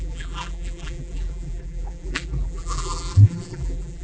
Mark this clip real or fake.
fake